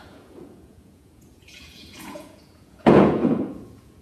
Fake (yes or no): yes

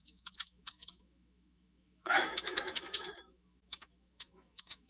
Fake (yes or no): yes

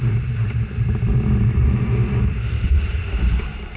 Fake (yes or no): yes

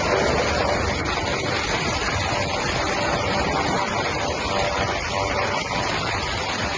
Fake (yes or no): no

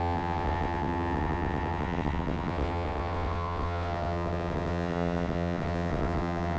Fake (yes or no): yes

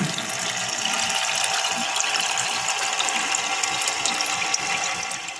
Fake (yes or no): yes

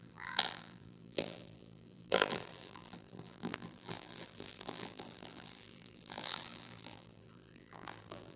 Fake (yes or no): yes